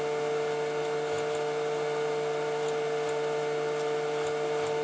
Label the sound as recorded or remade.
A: recorded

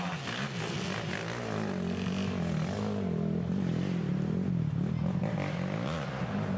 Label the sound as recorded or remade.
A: recorded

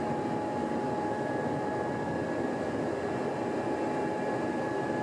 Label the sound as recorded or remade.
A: recorded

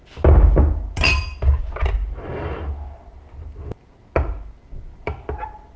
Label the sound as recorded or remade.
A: recorded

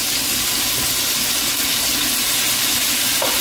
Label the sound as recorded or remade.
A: recorded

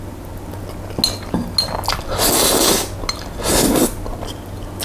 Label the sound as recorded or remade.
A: recorded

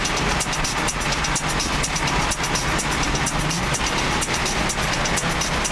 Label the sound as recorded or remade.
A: recorded